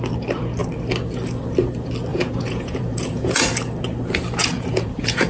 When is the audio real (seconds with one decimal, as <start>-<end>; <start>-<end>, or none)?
0.0-2.1; 3.4-4.4